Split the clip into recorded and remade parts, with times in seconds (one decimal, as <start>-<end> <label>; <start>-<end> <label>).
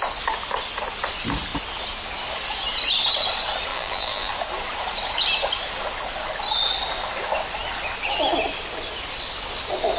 0.0-3.7 recorded; 3.7-4.3 remade; 4.3-10.0 recorded